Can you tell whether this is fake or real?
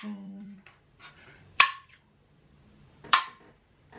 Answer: fake